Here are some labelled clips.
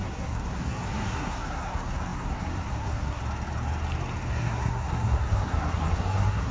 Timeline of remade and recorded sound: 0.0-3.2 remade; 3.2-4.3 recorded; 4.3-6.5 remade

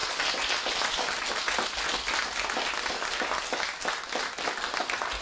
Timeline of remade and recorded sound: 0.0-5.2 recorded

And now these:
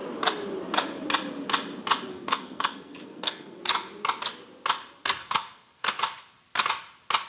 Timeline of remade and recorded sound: 0.0-2.1 recorded; 2.1-3.6 remade; 3.6-5.2 recorded; 5.2-6.0 remade; 6.0-7.3 recorded

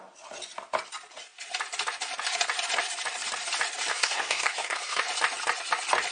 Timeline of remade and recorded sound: 0.0-3.9 recorded; 3.9-5.0 remade; 5.0-6.1 recorded

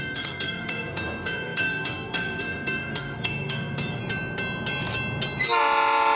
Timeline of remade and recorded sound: 0.0-4.0 remade; 4.0-6.2 recorded

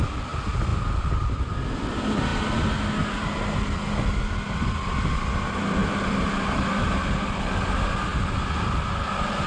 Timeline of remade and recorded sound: 0.0-9.5 recorded

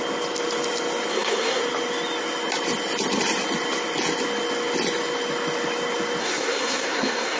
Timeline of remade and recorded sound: 0.0-1.1 recorded; 1.1-1.6 remade; 1.6-6.2 recorded; 6.2-7.4 remade

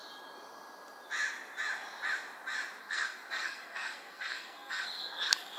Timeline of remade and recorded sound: 0.0-2.8 recorded; 2.8-5.6 remade